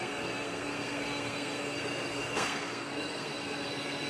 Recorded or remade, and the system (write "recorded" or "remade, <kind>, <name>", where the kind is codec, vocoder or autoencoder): remade, codec, SNAC